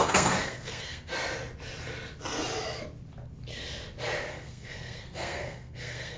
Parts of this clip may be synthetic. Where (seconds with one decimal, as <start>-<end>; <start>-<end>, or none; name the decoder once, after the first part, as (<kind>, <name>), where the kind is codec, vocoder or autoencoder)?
0.0-1.1 (codec, SNAC); 4.3-6.2